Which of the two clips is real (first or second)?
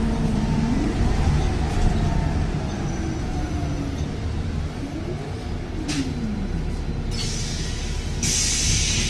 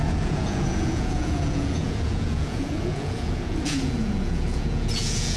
first